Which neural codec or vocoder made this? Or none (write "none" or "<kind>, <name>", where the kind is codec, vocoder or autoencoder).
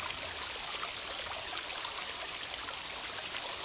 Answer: none